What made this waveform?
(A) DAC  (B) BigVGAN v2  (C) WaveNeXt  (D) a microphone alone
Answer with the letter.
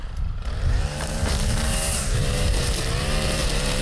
B